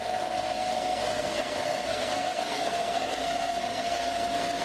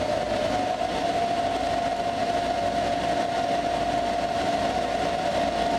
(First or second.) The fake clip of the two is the first